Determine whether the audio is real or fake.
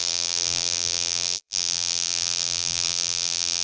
fake